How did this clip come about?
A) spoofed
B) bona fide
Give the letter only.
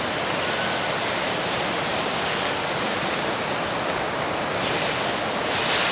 B